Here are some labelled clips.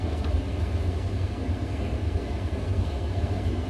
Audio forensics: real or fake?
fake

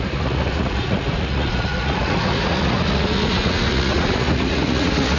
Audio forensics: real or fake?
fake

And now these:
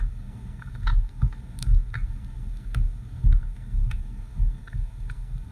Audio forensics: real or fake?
fake